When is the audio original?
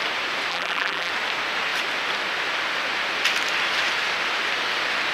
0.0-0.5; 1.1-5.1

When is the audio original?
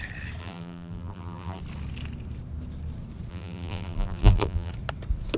0.0-0.4; 1.6-3.3; 4.7-5.4